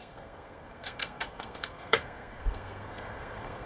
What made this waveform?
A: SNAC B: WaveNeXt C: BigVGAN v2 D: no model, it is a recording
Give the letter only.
A